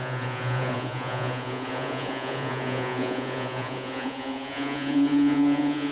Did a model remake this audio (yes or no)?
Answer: yes